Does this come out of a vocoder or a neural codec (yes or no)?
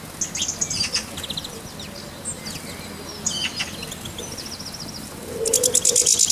no